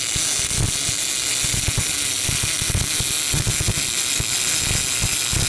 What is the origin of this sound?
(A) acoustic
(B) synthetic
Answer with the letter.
A